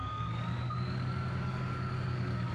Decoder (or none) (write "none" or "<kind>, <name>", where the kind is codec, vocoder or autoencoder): codec, DAC